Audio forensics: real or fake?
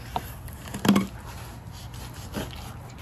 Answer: real